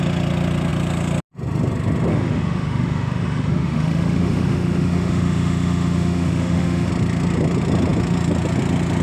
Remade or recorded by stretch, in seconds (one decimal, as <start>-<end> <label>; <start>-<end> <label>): 0.0-2.1 recorded; 2.1-6.9 remade; 6.9-9.0 recorded